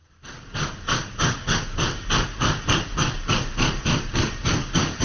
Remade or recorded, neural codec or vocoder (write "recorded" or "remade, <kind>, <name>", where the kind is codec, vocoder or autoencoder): recorded